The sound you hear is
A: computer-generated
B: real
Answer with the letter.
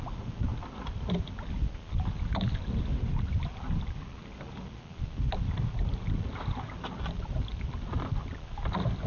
B